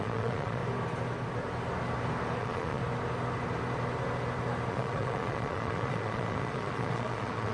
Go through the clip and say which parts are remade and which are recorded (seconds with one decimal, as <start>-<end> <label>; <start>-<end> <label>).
0.0-0.6 remade; 0.6-2.4 recorded; 2.4-2.8 remade; 2.8-4.7 recorded; 4.7-7.5 remade